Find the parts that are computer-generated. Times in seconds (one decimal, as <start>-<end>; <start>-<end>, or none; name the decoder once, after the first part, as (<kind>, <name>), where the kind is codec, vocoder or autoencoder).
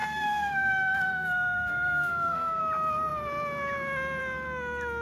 0.0-2.6 (codec, SNAC)